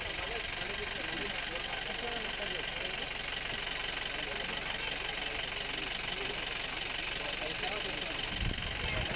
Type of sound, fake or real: real